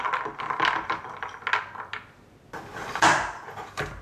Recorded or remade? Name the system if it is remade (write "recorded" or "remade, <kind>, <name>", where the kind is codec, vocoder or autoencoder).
recorded